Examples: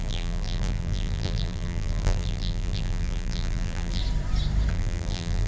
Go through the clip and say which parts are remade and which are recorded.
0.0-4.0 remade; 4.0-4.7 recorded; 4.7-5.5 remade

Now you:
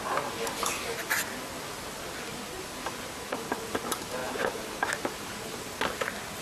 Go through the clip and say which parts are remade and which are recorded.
0.0-4.2 recorded; 4.2-4.8 remade; 4.8-6.4 recorded

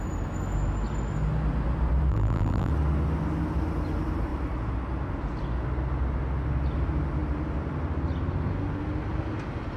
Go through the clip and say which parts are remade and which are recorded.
0.0-2.1 recorded; 2.1-2.7 remade; 2.7-9.8 recorded